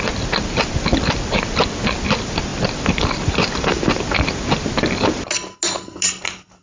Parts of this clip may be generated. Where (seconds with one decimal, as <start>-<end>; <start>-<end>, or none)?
none